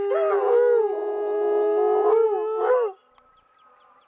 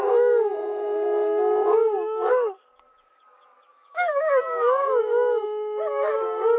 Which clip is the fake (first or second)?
second